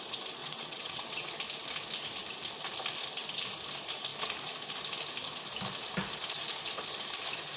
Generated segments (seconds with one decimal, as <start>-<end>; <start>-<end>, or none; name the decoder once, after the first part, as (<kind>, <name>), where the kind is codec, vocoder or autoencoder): 0.4-1.3 (vocoder, WaveNeXt)